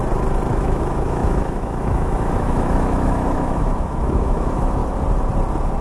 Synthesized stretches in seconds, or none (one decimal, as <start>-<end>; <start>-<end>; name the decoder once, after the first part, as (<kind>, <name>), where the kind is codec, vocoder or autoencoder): 0.5-4.8 (autoencoder, DAC-VAE)